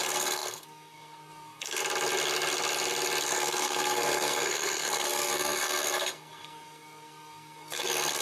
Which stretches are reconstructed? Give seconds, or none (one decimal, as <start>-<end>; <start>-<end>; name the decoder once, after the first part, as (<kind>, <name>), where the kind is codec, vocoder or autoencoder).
0.0-1.8 (codec, SNAC); 3.3-8.2

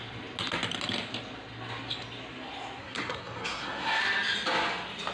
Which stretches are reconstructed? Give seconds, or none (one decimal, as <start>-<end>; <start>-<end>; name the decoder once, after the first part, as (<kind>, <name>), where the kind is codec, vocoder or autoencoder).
2.8-4.0 (codec, SNAC)

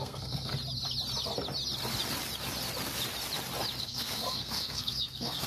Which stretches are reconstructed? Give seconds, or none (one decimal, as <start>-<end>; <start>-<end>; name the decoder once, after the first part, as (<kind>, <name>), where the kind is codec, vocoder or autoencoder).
0.0-0.5 (codec, SNAC); 3.8-5.5

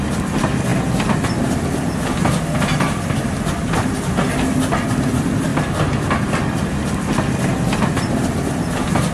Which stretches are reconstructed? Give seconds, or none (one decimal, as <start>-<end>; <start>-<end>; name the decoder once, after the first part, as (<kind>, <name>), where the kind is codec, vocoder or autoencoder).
none

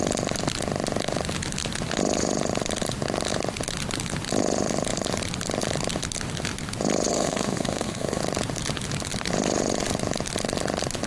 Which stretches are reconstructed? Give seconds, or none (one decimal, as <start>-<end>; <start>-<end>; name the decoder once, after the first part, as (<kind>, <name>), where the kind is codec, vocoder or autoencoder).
7.1-8.2 (codec, SNAC)

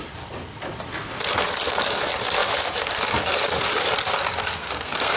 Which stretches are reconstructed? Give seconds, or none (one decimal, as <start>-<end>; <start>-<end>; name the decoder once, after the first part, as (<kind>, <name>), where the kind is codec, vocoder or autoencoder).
4.6-5.2 (codec, SNAC)

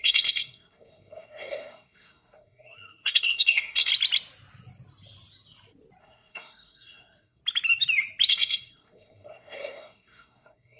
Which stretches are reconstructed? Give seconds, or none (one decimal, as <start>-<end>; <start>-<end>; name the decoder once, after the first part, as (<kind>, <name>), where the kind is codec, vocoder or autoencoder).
0.0-3.9 (codec, SNAC); 6.0-7.4; 8.3-10.8